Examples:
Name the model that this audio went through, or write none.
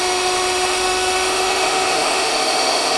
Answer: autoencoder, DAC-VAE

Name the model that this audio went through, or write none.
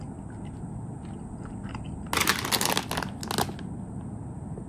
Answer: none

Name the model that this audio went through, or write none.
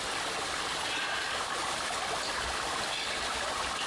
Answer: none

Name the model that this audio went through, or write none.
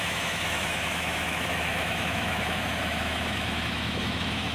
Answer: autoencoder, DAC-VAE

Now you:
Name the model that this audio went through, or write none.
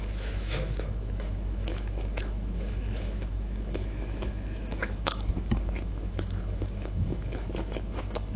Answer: autoencoder, DAC-VAE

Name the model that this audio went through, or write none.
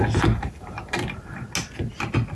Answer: none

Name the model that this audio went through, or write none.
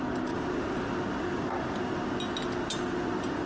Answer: none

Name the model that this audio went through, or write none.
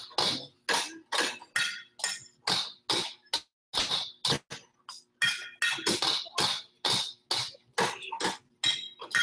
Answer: none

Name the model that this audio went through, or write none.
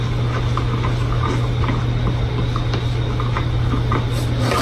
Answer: none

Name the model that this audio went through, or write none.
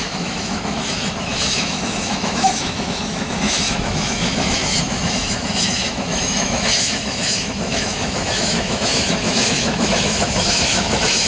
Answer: autoencoder, DAC-VAE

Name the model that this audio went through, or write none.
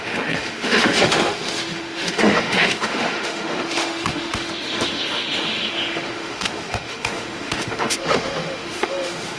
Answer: autoencoder, DAC-VAE